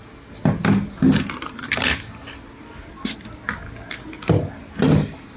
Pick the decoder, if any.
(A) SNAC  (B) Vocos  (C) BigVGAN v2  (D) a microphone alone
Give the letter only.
D